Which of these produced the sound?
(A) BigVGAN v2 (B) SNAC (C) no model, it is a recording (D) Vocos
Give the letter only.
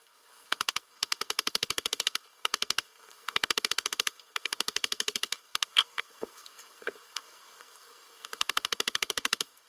B